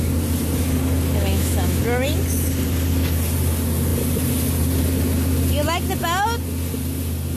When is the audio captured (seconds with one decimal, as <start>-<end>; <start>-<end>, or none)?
0.0-1.3; 1.8-7.4